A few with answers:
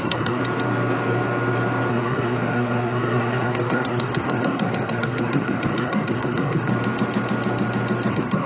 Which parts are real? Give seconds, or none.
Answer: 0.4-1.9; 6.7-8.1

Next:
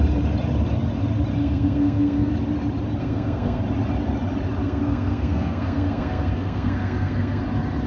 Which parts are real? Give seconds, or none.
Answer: 0.0-1.4; 2.3-3.0; 3.6-4.6; 7.4-7.9

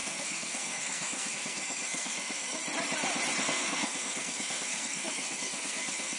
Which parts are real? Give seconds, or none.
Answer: 2.6-3.4

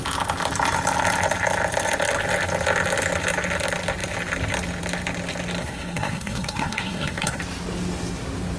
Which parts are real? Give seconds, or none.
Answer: 0.0-5.6; 7.4-8.6